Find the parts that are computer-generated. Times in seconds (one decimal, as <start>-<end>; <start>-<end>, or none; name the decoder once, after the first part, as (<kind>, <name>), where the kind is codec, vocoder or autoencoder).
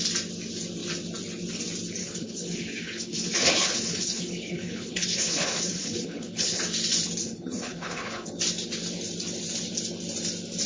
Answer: 2.0-6.6 (codec, HILCodec); 7.2-8.3